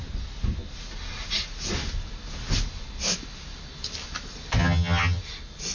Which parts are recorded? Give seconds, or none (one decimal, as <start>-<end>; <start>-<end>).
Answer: 0.0-4.6; 5.2-5.7

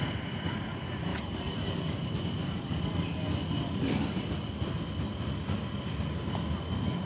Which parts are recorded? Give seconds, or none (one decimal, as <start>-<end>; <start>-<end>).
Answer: 0.0-1.1; 2.6-7.1

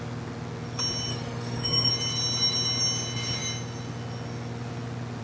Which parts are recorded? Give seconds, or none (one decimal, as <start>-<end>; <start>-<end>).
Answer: 0.0-1.1; 1.9-5.2

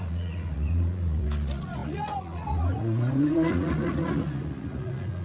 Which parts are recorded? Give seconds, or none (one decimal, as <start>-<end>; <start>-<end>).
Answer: none

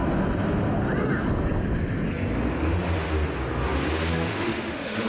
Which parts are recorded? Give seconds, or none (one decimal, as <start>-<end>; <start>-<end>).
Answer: 0.0-4.1

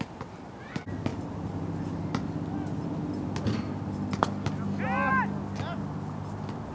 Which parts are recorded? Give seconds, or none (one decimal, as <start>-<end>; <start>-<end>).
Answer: 0.0-6.7

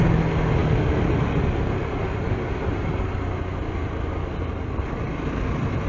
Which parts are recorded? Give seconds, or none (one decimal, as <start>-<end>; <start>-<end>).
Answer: 0.0-5.9

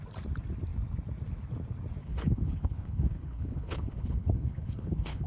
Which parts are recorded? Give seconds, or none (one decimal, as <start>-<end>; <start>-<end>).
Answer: 0.0-2.0